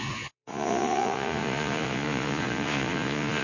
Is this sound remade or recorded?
remade